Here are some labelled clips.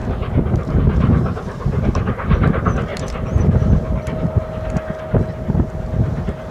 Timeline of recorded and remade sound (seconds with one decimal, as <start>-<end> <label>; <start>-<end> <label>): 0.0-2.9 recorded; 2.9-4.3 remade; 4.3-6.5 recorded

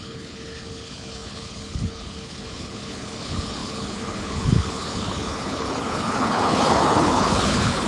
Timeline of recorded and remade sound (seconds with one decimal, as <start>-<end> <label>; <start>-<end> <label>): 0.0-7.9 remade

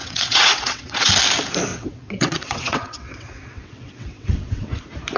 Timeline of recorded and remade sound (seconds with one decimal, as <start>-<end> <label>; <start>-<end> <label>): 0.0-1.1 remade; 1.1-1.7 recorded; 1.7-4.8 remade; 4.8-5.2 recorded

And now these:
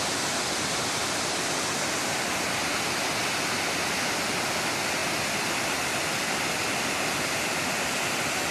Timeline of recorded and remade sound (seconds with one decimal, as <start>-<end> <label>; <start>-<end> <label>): 0.0-8.5 recorded